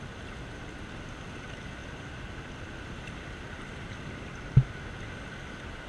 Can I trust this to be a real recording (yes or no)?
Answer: yes